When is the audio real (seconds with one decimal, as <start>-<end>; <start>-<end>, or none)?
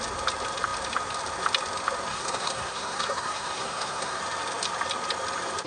0.0-2.1; 4.2-5.7